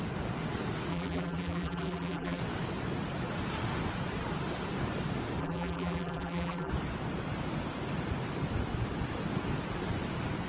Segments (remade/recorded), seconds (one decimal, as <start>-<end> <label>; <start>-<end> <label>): 0.0-0.9 recorded; 0.9-2.4 remade; 2.4-5.4 recorded; 5.4-6.7 remade; 6.7-10.5 recorded